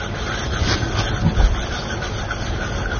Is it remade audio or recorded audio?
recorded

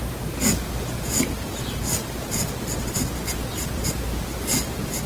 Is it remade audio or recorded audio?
recorded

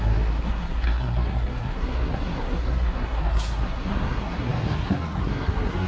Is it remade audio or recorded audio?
remade